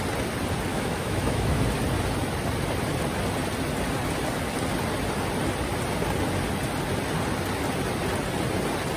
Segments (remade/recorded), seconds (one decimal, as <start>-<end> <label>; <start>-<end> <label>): 0.0-0.7 recorded; 0.7-1.6 remade; 1.6-9.0 recorded